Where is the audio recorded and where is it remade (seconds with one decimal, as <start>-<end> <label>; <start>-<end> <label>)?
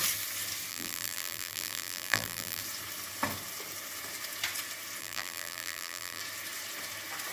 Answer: 0.0-0.7 recorded; 0.7-2.6 remade; 2.6-5.0 recorded; 5.0-6.2 remade; 6.2-7.3 recorded